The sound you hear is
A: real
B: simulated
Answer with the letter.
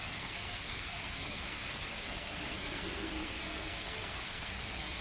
B